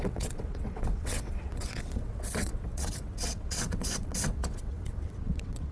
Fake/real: fake